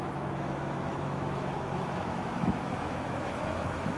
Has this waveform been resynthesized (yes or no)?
yes